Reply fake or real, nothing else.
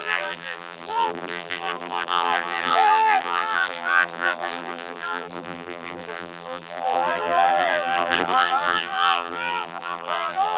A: fake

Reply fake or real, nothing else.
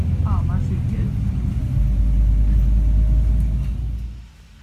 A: real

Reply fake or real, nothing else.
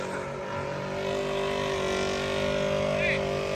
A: real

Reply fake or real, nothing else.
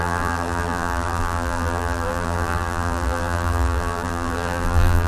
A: fake